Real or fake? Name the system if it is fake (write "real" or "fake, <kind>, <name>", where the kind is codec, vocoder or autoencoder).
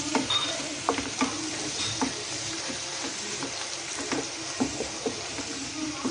fake, vocoder, BigVGAN v2